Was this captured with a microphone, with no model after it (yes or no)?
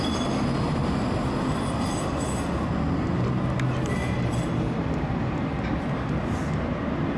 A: yes